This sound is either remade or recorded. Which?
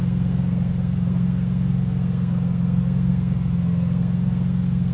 remade